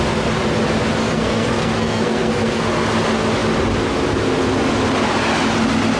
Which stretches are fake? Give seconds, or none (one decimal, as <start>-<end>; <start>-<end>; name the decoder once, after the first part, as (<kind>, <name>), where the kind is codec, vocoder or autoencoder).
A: 1.0-2.6 (codec, SNAC)